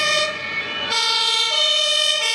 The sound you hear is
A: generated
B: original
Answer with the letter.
A